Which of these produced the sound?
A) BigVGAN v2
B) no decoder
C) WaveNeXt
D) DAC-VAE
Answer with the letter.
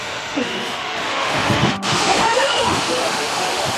D